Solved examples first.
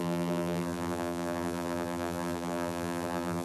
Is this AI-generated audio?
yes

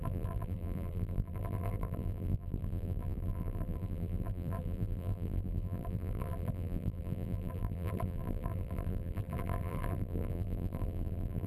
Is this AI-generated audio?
yes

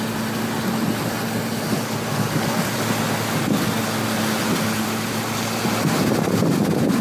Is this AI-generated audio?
no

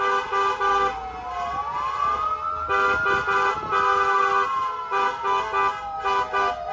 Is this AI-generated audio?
no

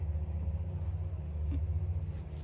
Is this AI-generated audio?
no